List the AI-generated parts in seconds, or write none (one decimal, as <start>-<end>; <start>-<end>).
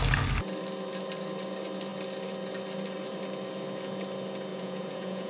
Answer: 4.5-5.3